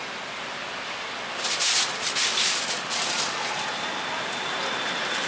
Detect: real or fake real